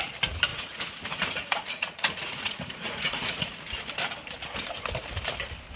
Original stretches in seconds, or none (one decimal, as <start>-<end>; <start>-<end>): 0.0-0.5; 3.4-5.8